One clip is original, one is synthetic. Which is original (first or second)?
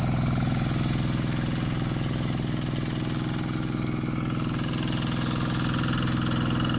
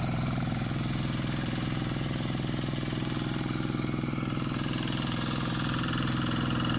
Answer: first